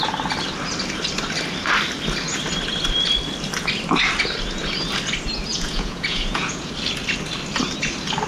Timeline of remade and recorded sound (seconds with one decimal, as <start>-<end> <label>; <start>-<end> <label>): 0.0-5.5 recorded; 5.5-6.7 remade; 6.7-8.3 recorded